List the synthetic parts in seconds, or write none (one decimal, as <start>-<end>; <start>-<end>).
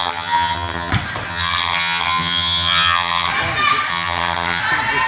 0.0-0.9; 1.3-3.3; 3.9-4.6